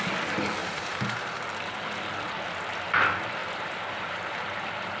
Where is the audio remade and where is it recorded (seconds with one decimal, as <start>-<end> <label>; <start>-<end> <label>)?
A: 0.0-0.6 recorded; 0.6-1.4 remade; 1.4-3.4 recorded; 3.4-4.6 remade; 4.6-5.0 recorded